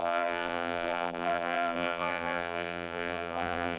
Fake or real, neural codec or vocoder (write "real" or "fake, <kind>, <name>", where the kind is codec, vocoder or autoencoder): fake, vocoder, BigVGAN v2